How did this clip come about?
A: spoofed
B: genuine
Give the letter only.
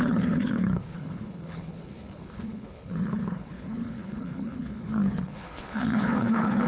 A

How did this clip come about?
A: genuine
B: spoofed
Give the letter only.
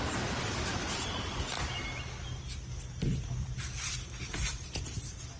A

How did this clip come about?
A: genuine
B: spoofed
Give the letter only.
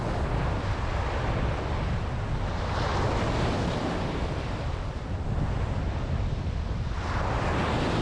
A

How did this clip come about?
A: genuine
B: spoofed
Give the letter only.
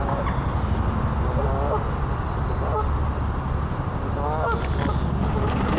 A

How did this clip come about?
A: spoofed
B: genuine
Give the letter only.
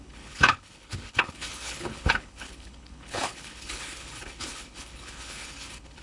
A